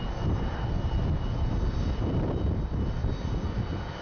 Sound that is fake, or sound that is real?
real